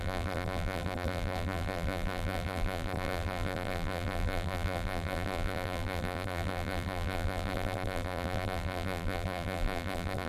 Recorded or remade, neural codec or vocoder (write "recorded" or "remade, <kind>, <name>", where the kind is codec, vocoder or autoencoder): remade, vocoder, BigVGAN v2